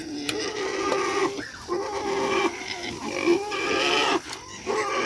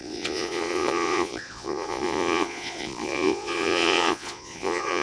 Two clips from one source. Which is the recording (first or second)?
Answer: first